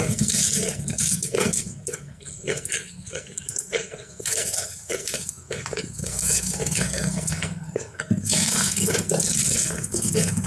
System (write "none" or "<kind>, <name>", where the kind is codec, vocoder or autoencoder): codec, SNAC